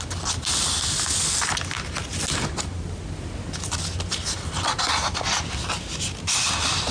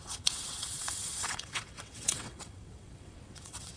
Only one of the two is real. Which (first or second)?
first